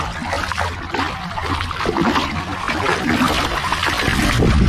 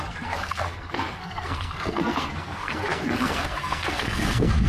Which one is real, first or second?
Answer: first